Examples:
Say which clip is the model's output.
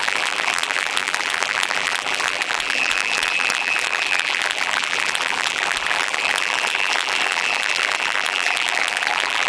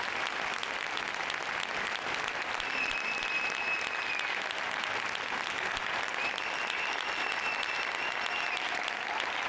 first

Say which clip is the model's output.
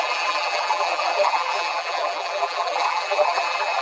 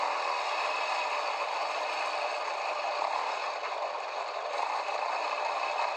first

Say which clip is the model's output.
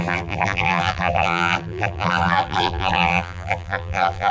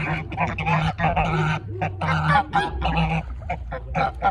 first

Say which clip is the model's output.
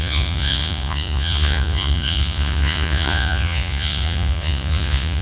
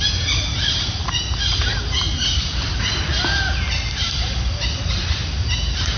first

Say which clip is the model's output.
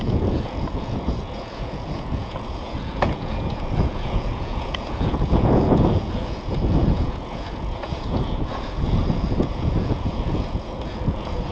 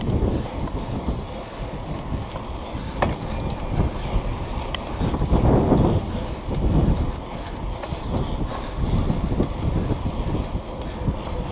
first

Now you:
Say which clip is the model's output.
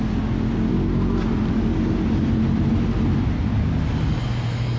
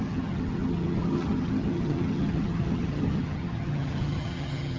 second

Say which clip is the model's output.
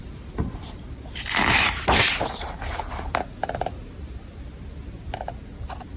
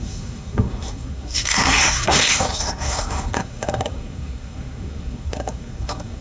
second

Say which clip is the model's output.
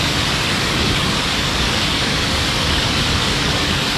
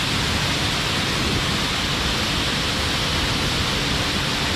first